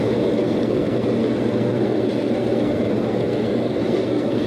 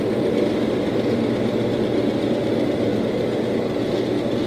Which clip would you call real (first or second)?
second